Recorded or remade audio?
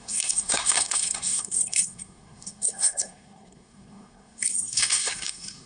remade